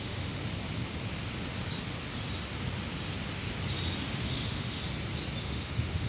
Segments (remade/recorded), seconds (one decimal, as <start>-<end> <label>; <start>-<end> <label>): 0.0-0.4 remade; 0.4-4.1 recorded; 4.1-4.8 remade; 4.8-5.4 recorded; 5.4-6.1 remade